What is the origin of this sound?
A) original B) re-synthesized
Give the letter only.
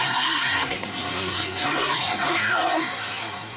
B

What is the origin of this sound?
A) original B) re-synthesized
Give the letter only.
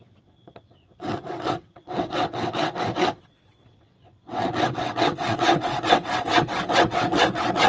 B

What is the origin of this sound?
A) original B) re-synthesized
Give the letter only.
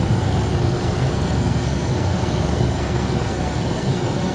B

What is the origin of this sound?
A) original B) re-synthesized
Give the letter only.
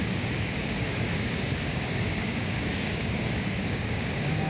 B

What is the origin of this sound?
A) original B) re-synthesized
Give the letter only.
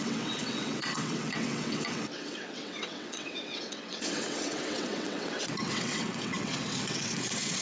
B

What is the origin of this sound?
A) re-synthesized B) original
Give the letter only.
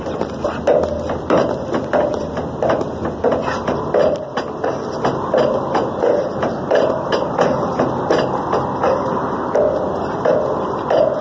B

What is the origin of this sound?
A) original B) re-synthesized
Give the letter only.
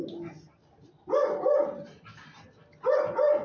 A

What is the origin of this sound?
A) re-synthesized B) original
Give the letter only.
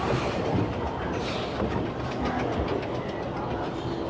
B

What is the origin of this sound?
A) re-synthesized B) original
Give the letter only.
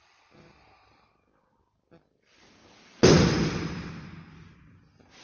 B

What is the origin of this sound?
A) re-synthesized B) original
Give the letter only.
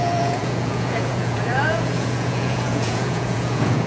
A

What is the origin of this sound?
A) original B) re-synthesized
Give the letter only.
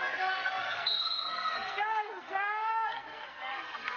B